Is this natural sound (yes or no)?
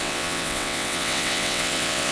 no